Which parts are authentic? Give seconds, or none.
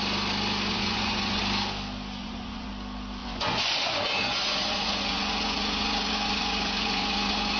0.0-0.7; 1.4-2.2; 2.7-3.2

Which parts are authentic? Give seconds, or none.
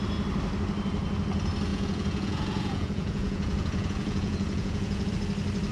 0.0-1.7; 5.1-5.7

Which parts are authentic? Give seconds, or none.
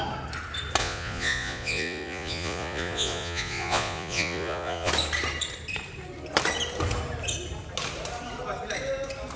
0.0-0.8; 4.9-9.4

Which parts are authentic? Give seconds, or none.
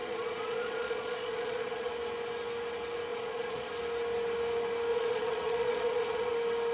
1.9-3.1; 3.7-4.9; 6.3-6.7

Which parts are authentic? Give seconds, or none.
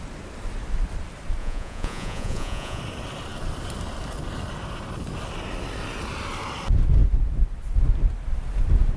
0.0-1.4; 2.8-9.0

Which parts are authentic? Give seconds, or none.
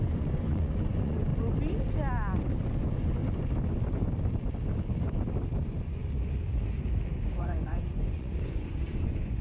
1.3-2.8; 3.2-5.6; 6.0-7.1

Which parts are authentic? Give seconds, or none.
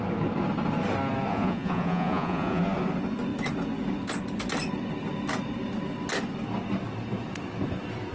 0.0-1.3; 2.6-8.1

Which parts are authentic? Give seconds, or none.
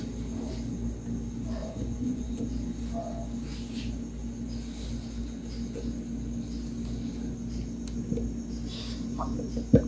0.0-1.6; 2.4-9.9